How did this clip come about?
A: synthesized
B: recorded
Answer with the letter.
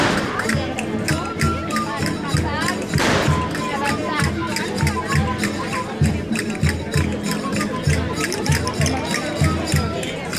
B